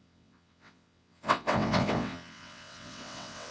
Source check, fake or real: fake